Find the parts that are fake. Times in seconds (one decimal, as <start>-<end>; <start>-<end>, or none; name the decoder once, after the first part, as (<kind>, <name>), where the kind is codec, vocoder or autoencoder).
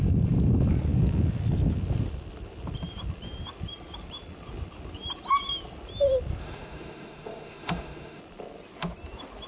6.4-8.2 (autoencoder, DAC-VAE)